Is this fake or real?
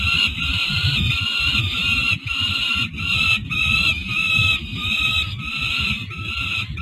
real